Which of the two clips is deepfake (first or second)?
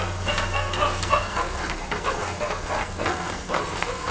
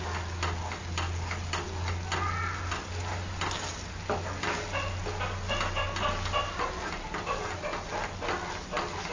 first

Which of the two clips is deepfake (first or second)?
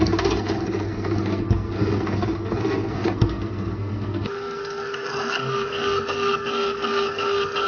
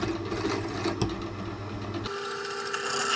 first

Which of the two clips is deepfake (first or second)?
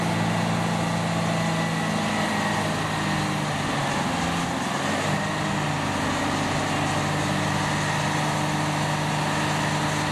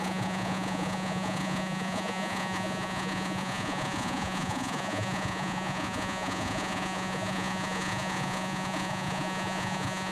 second